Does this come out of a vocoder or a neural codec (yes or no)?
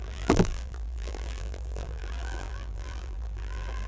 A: yes